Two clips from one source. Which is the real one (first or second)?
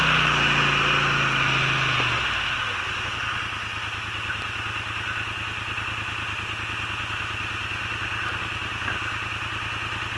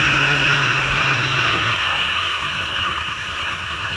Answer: first